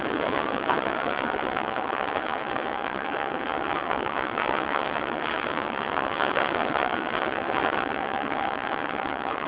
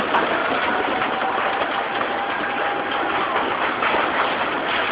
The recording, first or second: second